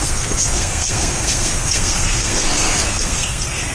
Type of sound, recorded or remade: remade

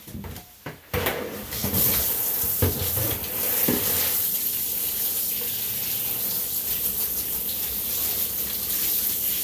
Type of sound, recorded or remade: recorded